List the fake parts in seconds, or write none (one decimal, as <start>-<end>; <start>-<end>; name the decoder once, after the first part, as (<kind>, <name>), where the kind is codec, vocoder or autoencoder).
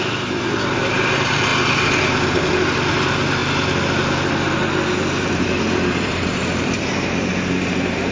0.0-1.5 (vocoder, BigVGAN v2); 2.9-3.4; 5.3-8.1